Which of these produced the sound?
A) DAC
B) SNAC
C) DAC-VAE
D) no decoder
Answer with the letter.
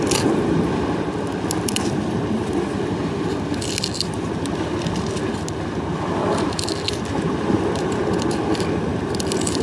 D